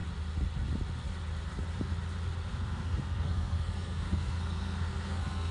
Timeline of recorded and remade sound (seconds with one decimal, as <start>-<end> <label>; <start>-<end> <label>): 0.0-2.5 recorded; 2.5-5.5 remade

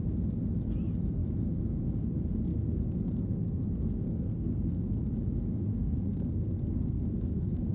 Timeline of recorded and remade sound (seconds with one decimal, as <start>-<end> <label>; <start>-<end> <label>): 0.0-2.5 recorded; 2.5-5.0 remade; 5.0-5.7 recorded; 5.7-7.7 remade

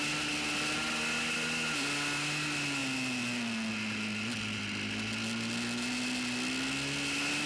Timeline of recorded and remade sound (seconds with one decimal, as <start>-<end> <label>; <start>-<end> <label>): 0.0-7.5 recorded

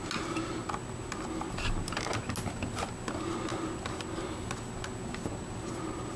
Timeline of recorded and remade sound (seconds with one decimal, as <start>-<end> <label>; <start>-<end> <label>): 0.0-6.2 recorded

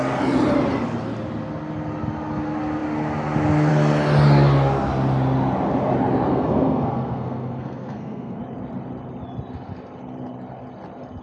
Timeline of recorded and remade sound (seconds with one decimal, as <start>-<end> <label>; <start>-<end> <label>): 0.0-6.3 recorded; 6.3-8.4 remade; 8.4-11.2 recorded

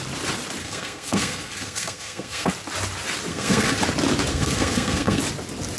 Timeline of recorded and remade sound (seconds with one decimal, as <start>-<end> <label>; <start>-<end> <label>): 0.0-0.6 recorded; 0.6-2.5 remade; 2.5-3.3 recorded; 3.3-3.8 remade; 3.8-4.3 recorded; 4.3-5.2 remade; 5.2-5.8 recorded

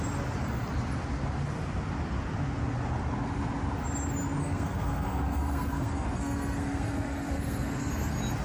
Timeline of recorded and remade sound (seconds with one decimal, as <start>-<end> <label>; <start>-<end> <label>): 0.0-4.4 recorded; 4.4-7.9 remade; 7.9-8.4 recorded